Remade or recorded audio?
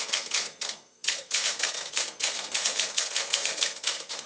remade